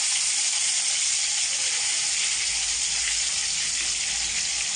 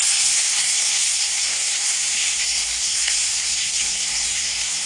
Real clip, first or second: first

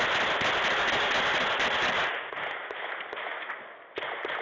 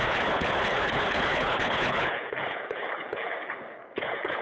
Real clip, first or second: first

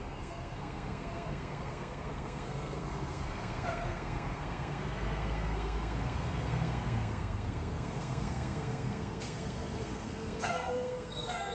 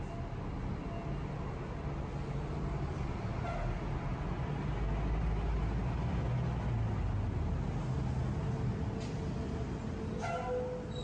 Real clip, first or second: second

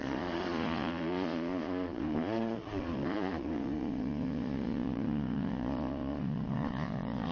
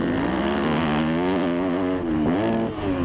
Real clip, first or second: second